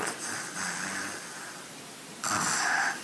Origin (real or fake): real